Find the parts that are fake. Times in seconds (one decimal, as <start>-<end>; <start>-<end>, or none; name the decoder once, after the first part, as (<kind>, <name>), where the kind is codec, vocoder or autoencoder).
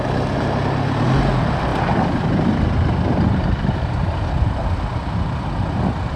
1.7-5.4 (vocoder, BigVGAN v2)